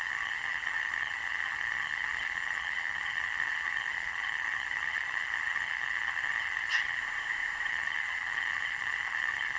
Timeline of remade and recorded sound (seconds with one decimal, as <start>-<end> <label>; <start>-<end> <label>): 0.0-7.0 remade; 7.0-7.7 recorded; 7.7-9.6 remade